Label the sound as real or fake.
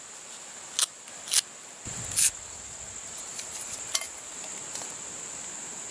real